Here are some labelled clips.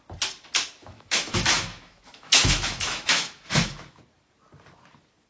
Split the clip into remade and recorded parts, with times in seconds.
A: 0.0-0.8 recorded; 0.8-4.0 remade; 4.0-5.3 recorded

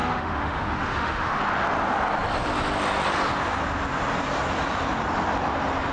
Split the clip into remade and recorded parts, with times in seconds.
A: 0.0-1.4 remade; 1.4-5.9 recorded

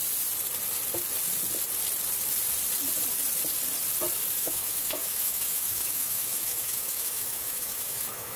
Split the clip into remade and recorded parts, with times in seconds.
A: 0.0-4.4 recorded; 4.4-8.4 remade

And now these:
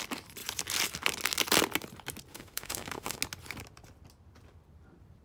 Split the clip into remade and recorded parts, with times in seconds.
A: 0.0-2.3 recorded; 2.3-3.2 remade; 3.2-5.2 recorded

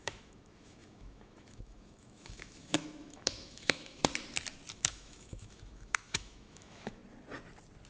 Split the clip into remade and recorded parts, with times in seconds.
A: 0.0-4.0 remade; 4.0-4.7 recorded; 4.7-7.0 remade; 7.0-7.9 recorded

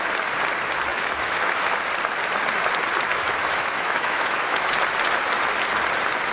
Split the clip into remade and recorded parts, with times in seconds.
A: 0.0-0.9 recorded; 0.9-1.7 remade; 1.7-3.1 recorded; 3.1-4.7 remade; 4.7-6.3 recorded

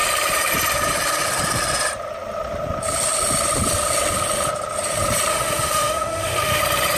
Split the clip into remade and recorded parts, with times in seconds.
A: 0.0-5.3 recorded; 5.3-6.6 remade; 6.6-7.0 recorded

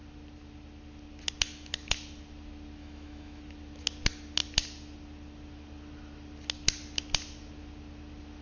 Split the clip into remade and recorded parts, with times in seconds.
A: 0.0-2.8 recorded; 2.8-3.4 remade; 3.4-8.4 recorded